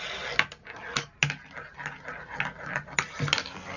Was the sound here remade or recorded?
recorded